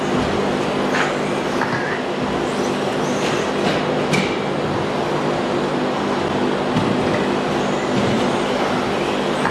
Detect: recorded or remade recorded